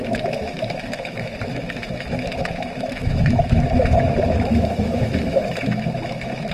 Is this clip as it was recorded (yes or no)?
no